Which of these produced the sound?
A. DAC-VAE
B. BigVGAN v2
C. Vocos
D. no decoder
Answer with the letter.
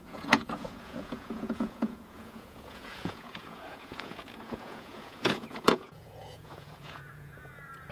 C